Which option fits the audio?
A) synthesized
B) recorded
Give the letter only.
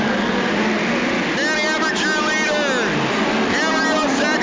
B